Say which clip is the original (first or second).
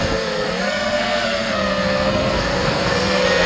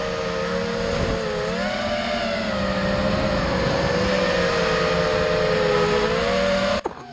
second